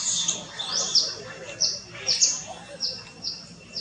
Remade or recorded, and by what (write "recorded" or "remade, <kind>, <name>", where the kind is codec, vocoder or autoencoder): remade, vocoder, BigVGAN v2